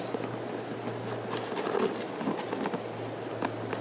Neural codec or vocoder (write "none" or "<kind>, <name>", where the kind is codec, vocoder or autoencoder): none